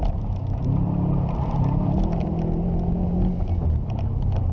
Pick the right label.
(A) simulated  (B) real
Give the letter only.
B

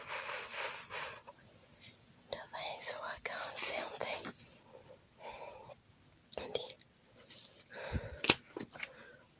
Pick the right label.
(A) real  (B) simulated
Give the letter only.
A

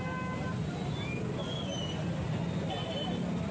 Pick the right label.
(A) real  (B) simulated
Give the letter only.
A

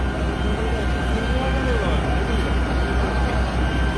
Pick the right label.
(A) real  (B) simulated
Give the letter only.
A